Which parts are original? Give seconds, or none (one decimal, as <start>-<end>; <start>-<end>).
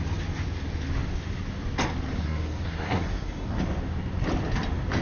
0.0-2.2; 3.6-5.0